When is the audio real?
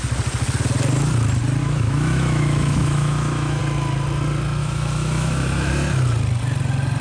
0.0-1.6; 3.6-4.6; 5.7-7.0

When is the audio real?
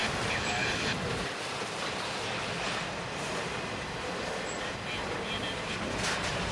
none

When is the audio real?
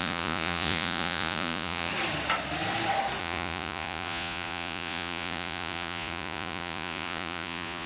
1.9-3.2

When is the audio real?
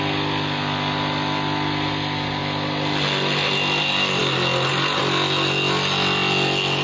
0.0-6.8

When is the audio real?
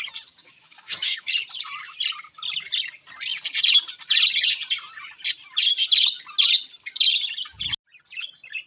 0.0-0.4; 1.3-8.7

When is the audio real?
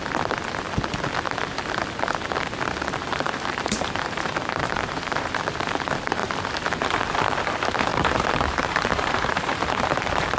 0.0-3.1; 5.3-7.9